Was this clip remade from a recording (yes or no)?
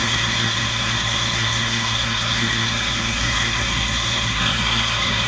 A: yes